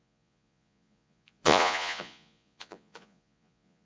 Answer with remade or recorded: remade